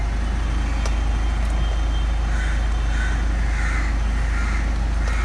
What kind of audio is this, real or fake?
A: real